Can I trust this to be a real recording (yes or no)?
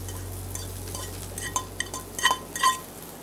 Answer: yes